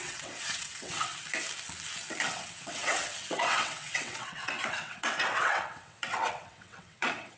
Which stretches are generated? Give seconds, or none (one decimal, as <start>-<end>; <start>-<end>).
0.0-1.1; 2.3-7.4